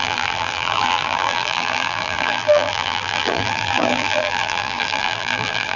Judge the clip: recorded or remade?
remade